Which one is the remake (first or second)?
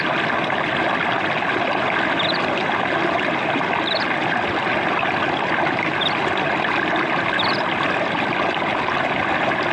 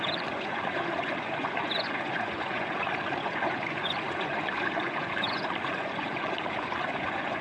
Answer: second